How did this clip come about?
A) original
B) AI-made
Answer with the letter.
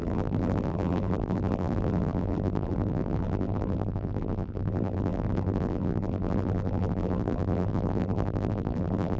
B